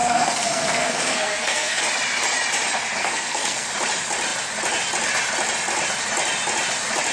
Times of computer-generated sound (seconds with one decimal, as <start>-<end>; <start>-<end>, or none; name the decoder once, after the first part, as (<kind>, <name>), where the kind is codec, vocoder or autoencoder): 0.0-1.8 (codec, SNAC); 3.0-3.7